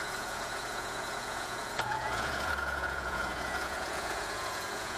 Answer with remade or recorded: remade